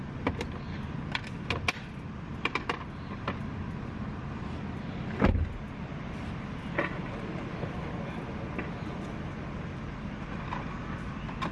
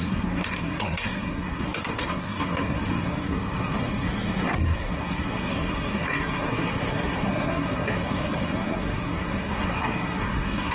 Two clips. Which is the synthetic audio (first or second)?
second